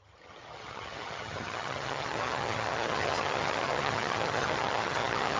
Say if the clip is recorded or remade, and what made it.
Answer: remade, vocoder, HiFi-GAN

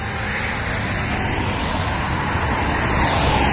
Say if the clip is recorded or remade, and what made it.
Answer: recorded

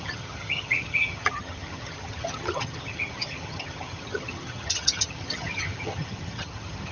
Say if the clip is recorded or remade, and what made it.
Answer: remade, vocoder, HiFi-GAN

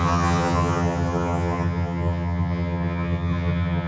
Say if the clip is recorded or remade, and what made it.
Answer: remade, vocoder, HiFi-GAN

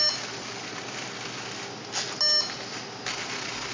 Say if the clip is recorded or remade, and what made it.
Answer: recorded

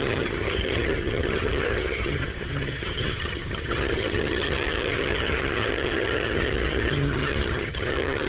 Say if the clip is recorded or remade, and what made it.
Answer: remade, vocoder, HiFi-GAN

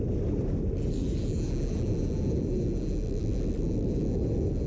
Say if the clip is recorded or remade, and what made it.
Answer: recorded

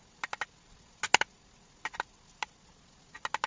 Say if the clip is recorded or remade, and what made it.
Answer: recorded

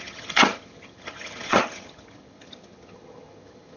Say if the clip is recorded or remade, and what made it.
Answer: remade, vocoder, HiFi-GAN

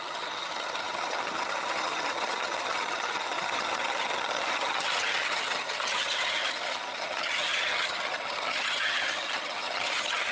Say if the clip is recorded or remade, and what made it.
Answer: remade, vocoder, HiFi-GAN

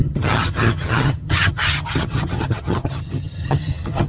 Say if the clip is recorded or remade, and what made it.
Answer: remade, vocoder, HiFi-GAN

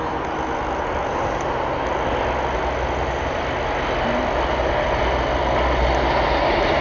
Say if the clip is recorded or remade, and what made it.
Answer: recorded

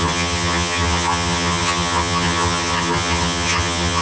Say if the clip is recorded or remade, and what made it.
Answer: remade, vocoder, HiFi-GAN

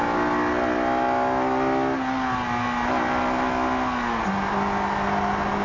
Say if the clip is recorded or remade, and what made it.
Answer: recorded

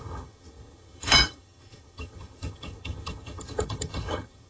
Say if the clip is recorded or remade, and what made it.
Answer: remade, vocoder, HiFi-GAN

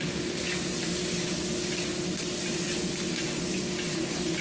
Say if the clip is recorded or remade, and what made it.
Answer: recorded